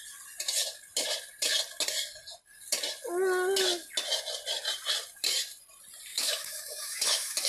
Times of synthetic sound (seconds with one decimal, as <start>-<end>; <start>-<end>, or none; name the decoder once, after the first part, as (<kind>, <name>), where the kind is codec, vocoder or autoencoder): 6.1-7.5 (autoencoder, DAC-VAE)